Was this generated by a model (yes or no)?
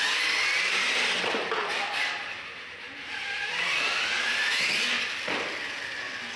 no